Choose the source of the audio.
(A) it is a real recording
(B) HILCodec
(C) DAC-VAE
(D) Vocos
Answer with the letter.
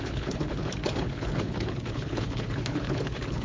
B